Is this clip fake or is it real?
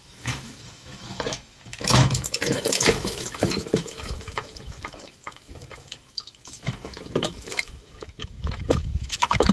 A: fake